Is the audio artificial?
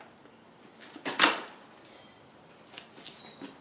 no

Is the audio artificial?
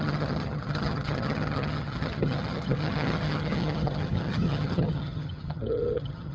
yes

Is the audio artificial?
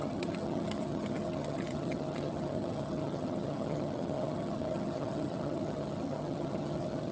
yes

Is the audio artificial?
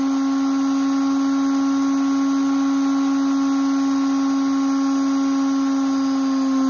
no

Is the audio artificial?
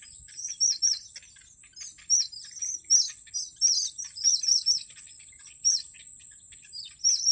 no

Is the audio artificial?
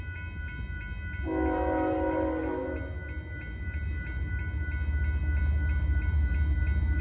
no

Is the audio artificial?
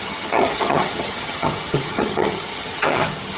yes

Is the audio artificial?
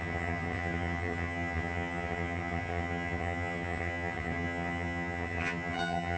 yes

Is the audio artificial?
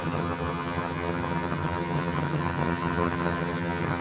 yes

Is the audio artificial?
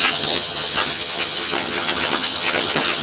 yes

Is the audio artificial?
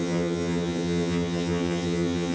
yes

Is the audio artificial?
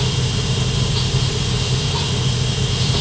no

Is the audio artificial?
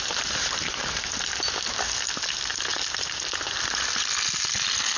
no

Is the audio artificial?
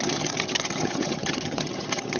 yes